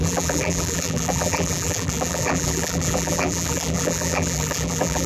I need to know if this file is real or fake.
fake